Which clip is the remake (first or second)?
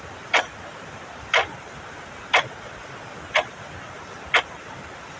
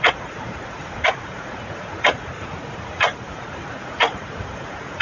second